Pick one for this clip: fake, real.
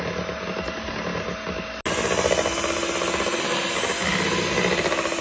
real